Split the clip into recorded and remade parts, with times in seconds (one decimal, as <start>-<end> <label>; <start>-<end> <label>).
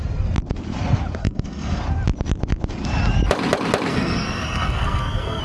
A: 0.0-1.2 recorded; 1.2-1.8 remade; 1.8-3.9 recorded; 3.9-5.4 remade